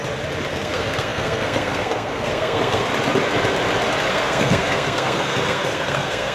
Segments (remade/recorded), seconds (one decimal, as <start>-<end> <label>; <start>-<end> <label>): 0.0-0.5 recorded; 0.5-2.9 remade; 2.9-4.1 recorded; 4.1-6.3 remade